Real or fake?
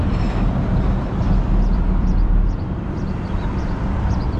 fake